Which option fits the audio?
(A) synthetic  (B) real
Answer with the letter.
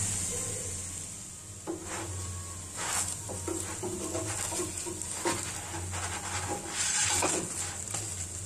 B